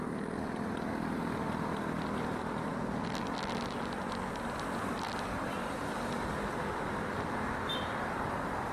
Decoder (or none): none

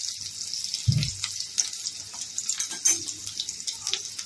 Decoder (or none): none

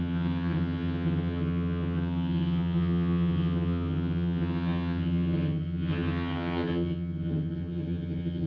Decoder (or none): vocoder, HiFi-GAN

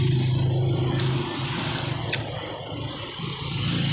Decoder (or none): none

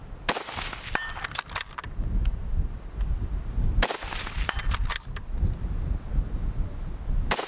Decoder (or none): none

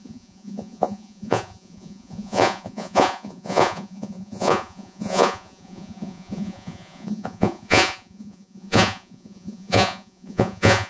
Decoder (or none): vocoder, Vocos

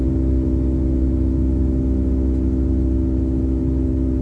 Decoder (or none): none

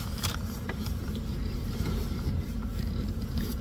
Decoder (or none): vocoder, BigVGAN v2